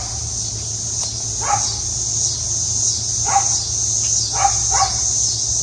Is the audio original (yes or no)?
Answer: yes